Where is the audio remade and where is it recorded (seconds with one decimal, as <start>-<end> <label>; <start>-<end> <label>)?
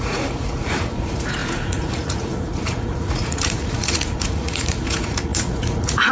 0.0-6.1 remade